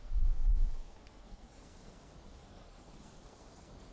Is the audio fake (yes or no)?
yes